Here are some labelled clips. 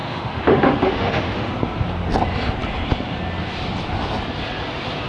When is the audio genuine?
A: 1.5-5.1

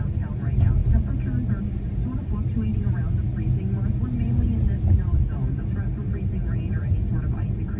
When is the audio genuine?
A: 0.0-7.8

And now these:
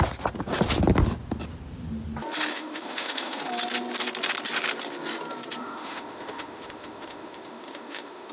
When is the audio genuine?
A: 0.0-2.5; 3.4-5.6